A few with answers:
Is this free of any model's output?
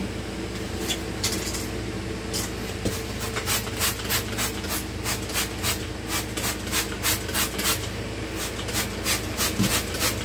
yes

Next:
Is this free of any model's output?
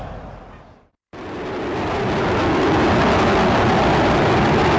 no